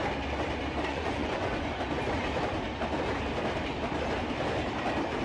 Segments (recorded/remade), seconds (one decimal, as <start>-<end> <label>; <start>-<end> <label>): 0.0-0.9 recorded; 0.9-1.8 remade; 1.8-5.2 recorded